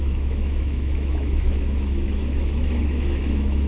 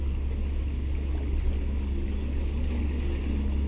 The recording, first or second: second